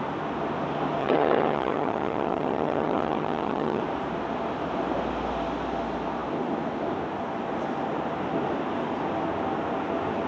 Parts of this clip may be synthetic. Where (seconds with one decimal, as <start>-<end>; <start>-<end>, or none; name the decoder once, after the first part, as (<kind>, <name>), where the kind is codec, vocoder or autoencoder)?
1.0-3.8 (vocoder, HiFi-GAN)